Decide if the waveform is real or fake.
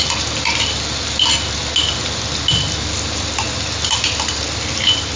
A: real